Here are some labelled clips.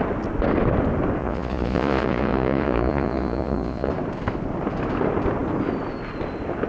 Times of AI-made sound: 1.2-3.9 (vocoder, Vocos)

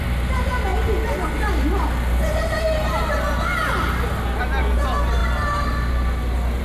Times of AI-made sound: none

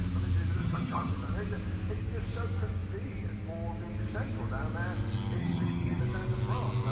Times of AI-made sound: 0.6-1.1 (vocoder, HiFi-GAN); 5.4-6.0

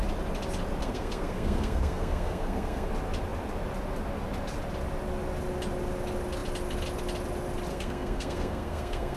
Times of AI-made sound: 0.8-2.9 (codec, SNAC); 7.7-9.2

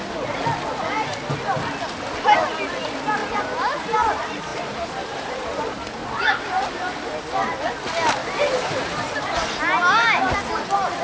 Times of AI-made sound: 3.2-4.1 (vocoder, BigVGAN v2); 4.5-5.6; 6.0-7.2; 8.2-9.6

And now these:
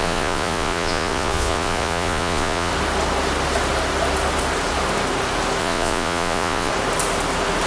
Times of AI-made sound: 0.0-2.7 (vocoder, Vocos); 5.6-6.7

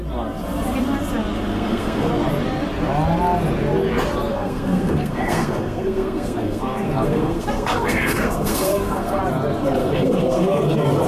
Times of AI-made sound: 1.5-2.1 (codec, SNAC); 4.3-9.2; 9.8-10.6